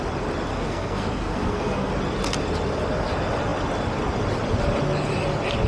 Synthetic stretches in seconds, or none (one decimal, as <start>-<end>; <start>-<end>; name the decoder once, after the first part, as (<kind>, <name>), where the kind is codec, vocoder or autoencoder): 0.5-1.9 (codec, SNAC)